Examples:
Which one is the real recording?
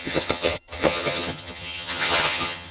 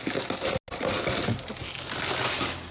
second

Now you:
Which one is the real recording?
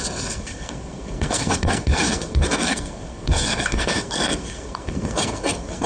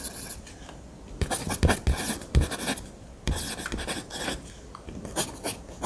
second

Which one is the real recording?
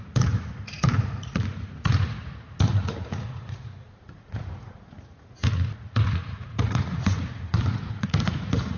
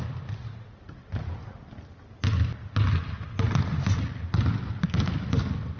second